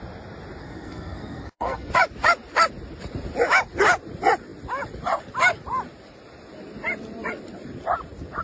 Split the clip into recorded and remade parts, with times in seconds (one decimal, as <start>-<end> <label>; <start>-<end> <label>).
0.0-0.6 recorded; 0.6-1.9 remade; 1.9-8.4 recorded